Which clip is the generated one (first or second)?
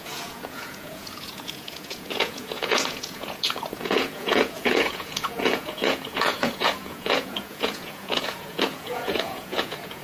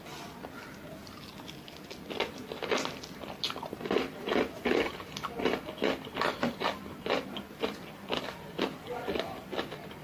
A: first